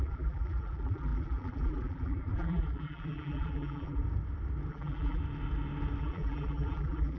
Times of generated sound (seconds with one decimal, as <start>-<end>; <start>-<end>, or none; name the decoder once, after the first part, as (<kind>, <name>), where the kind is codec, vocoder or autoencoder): 0.0-4.0 (vocoder, BigVGAN v2); 4.7-5.2; 6.0-7.2